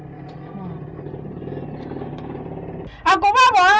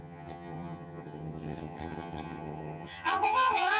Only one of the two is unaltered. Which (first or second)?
first